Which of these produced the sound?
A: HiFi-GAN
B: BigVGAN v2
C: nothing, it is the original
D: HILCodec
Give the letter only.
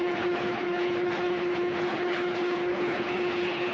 D